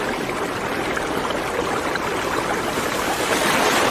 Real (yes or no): yes